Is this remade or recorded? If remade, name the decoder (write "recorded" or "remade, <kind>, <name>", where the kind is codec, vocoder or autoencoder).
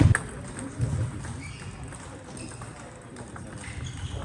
recorded